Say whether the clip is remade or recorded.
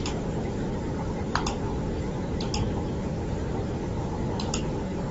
recorded